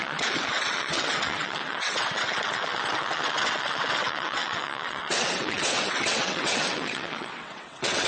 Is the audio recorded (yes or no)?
no